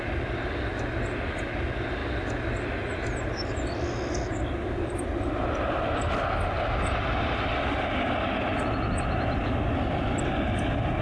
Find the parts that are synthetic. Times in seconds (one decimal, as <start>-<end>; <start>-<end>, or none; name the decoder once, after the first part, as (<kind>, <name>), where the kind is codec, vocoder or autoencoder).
none